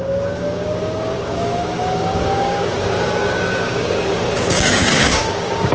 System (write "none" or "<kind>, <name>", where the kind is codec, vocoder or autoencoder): codec, DAC